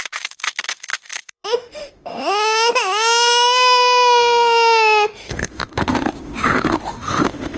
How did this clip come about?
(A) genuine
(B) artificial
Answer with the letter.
B